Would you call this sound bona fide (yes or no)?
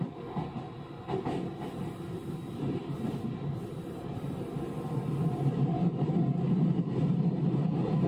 yes